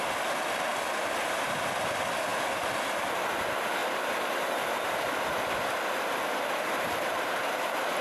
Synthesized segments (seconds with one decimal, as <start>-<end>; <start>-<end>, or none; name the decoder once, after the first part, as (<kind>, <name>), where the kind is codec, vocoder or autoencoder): none